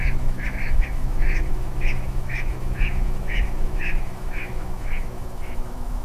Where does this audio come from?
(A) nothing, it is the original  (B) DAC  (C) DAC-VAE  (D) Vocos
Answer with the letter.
C